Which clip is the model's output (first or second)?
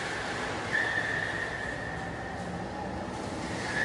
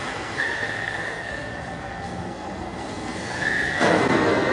second